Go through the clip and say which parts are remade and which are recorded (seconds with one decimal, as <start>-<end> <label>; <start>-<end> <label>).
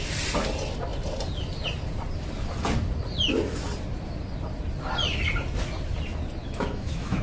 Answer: 0.0-6.4 recorded; 6.4-7.2 remade